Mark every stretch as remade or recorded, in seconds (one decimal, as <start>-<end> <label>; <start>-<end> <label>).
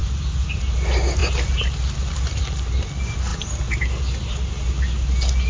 0.0-5.5 recorded